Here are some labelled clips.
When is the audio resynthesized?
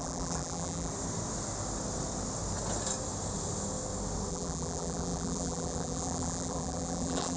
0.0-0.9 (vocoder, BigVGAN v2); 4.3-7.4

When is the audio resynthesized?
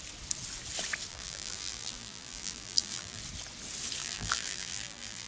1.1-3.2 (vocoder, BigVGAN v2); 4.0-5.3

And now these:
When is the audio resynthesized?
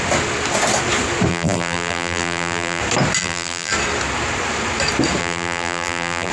1.3-2.8 (vocoder, BigVGAN v2); 3.2-3.7; 5.2-6.3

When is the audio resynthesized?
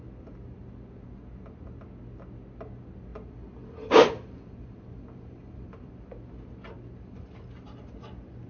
3.1-5.9 (vocoder, BigVGAN v2)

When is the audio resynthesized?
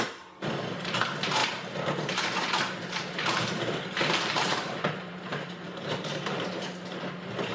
1.4-5.9 (vocoder, BigVGAN v2)